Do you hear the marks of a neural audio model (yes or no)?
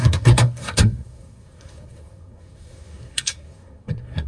yes